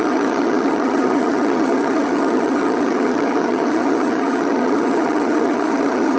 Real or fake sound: fake